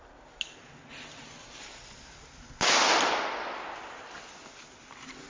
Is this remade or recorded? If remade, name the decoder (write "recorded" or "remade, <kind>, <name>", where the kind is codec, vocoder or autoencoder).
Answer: recorded